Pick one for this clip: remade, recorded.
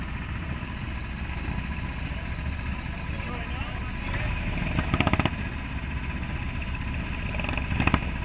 recorded